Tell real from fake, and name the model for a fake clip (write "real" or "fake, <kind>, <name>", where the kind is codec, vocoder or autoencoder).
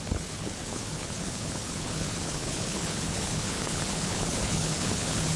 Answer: fake, codec, HILCodec